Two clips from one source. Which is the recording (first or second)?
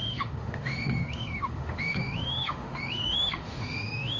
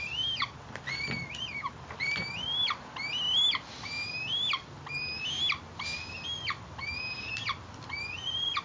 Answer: second